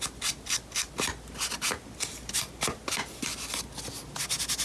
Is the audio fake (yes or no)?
no